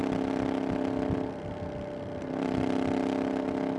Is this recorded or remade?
recorded